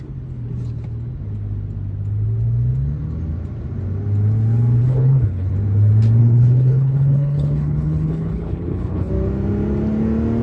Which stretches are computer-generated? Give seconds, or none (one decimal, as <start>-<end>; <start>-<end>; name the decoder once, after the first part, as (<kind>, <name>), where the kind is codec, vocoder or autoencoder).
4.8-5.5 (codec, HILCodec); 6.2-9.1